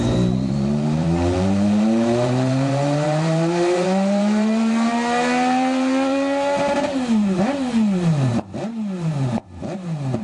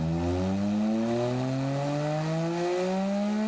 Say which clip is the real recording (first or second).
second